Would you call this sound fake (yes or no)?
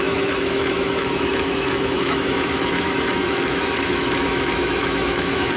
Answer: yes